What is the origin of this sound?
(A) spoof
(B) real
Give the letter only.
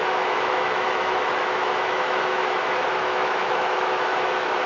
A